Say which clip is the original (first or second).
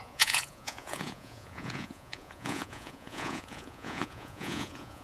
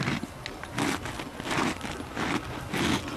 second